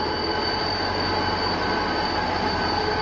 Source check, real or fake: real